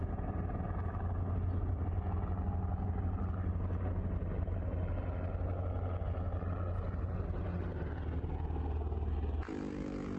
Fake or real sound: real